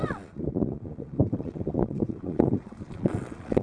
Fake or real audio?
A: fake